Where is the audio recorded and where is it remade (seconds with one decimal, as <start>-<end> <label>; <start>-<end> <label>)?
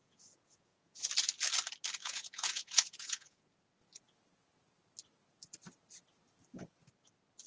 0.0-1.1 remade; 1.1-2.0 recorded; 2.0-3.5 remade; 3.5-7.5 recorded